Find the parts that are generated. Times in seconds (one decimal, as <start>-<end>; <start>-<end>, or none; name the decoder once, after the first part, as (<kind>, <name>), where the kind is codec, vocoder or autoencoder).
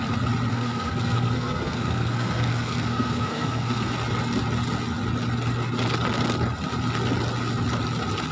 0.5-3.9 (codec, SNAC)